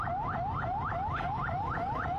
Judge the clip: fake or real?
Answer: fake